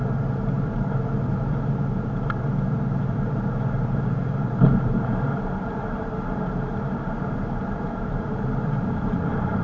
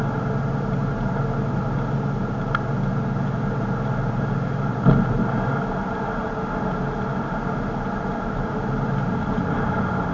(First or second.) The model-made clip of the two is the first